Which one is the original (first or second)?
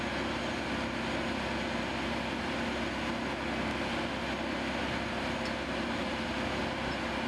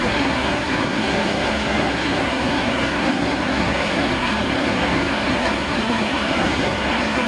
first